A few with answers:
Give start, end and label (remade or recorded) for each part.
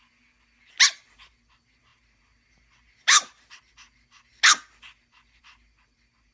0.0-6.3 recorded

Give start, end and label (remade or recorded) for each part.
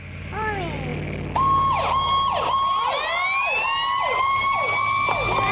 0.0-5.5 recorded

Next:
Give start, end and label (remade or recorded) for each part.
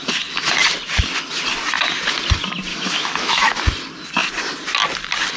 0.0-2.7 recorded; 2.7-3.6 remade; 3.6-5.4 recorded